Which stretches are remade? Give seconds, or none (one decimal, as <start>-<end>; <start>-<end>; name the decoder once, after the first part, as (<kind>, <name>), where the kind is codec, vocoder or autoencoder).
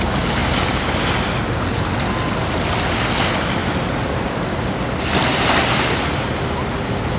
3.6-4.5 (vocoder, BigVGAN v2)